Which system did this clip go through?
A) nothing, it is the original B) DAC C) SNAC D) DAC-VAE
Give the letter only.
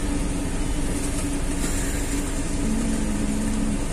A